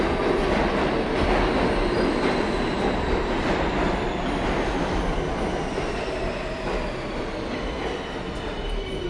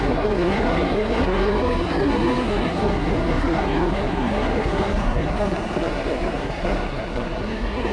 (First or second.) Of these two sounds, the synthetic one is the second